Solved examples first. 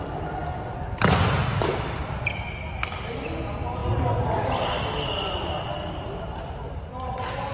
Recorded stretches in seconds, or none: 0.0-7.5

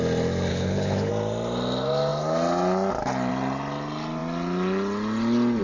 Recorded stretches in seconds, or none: 0.0-0.5; 1.1-5.6

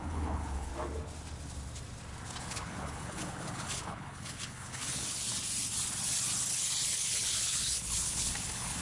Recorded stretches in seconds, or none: 0.7-2.4; 5.3-6.8

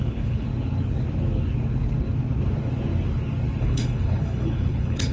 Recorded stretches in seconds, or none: 0.5-3.6

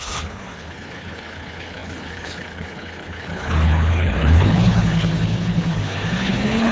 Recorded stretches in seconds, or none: none

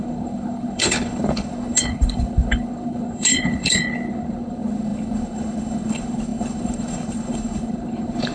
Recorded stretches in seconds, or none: none